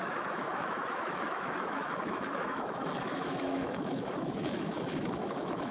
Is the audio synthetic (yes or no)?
yes